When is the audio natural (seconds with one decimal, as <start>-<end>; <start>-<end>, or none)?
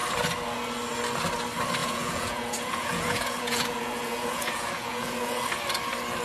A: 0.0-1.8; 5.4-6.2